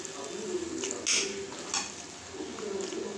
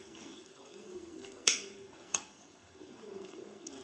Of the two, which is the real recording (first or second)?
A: first